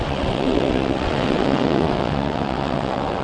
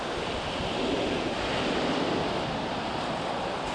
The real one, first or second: second